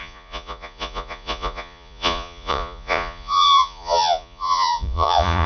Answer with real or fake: fake